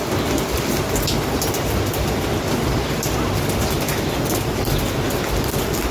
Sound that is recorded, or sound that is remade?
recorded